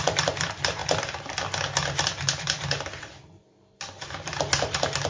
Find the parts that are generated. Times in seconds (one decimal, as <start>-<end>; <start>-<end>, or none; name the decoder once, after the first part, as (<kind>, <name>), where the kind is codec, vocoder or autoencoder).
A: none